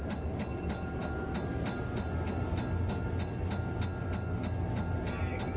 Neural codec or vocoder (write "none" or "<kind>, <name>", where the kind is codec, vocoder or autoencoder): none